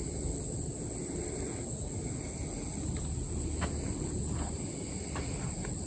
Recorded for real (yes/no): yes